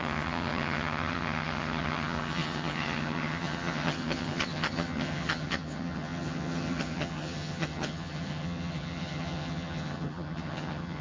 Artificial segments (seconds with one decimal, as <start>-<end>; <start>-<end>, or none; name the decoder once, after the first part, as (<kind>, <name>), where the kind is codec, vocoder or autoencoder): 0.0-11.0 (vocoder, HiFi-GAN)